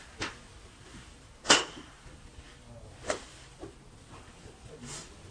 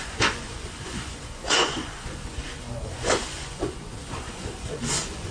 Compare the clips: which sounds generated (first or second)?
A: second